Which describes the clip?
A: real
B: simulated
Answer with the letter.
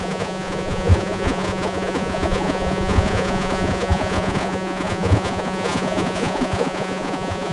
B